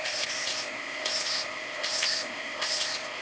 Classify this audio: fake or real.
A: fake